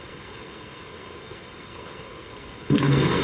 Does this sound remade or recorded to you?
remade